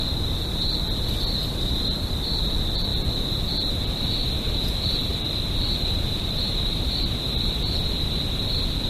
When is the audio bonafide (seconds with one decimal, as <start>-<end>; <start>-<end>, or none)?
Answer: 0.0-5.0